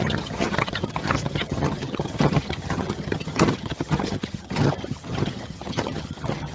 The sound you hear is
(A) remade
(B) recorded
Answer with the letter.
A